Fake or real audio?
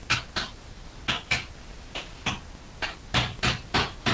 real